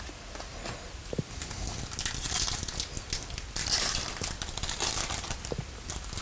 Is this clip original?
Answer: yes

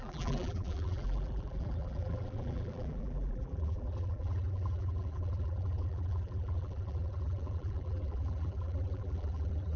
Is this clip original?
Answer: no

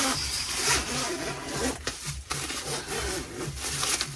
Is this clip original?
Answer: yes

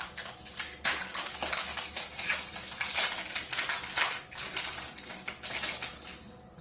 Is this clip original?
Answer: yes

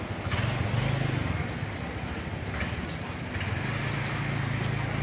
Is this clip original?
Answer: yes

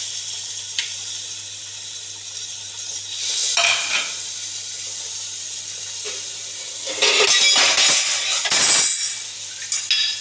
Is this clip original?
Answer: yes